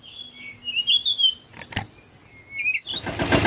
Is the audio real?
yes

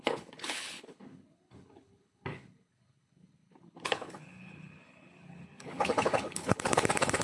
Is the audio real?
no